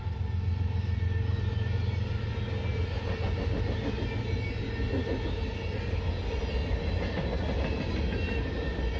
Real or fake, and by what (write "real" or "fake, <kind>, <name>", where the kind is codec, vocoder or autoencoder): real